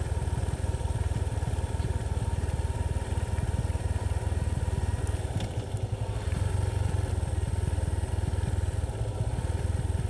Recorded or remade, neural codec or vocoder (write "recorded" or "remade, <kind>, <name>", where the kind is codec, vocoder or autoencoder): recorded